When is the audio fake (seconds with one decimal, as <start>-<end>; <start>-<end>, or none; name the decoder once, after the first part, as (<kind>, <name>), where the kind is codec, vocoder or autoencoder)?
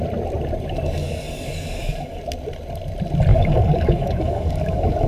1.0-2.2 (codec, DAC); 3.3-5.1